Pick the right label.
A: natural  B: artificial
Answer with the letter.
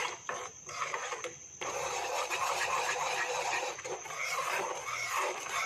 B